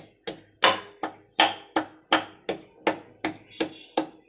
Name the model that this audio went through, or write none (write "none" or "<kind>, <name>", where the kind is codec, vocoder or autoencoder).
none